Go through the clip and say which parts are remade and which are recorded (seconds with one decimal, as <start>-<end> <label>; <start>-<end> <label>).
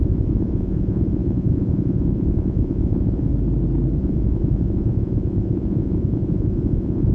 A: 0.0-3.3 remade; 3.3-4.0 recorded; 4.0-7.1 remade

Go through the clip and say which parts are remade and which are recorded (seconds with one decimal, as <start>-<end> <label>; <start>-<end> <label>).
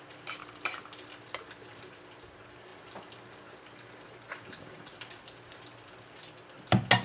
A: 0.0-7.0 recorded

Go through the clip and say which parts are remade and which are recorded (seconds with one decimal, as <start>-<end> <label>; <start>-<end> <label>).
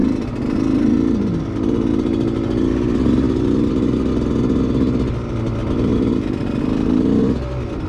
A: 0.0-5.6 recorded; 5.6-6.4 remade; 6.4-7.9 recorded